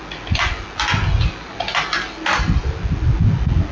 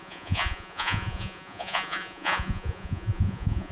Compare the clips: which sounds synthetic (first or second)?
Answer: second